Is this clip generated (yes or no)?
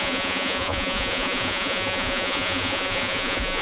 yes